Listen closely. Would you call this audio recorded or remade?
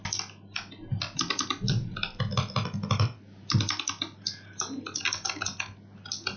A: recorded